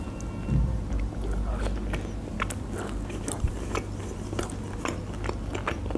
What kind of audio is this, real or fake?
real